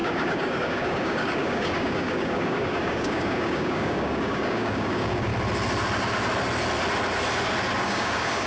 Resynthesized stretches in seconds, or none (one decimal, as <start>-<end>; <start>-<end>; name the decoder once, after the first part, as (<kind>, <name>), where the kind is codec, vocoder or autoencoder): 0.0-5.3 (codec, DAC); 7.8-8.5